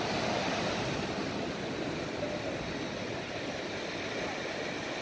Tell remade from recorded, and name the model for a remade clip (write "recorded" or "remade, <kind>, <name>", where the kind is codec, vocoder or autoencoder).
recorded